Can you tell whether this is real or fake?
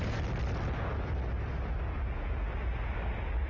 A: real